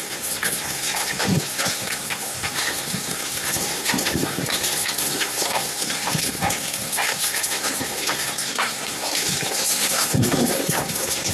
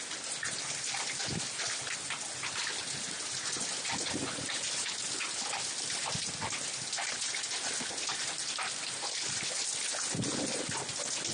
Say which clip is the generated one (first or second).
first